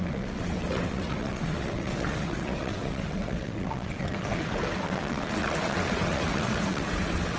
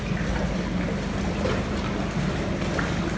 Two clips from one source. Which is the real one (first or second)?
second